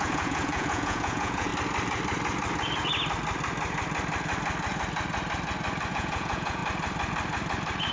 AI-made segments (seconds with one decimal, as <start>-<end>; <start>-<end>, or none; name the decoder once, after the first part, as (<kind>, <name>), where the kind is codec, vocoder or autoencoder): 0.0-1.5 (vocoder, Vocos); 5.9-6.6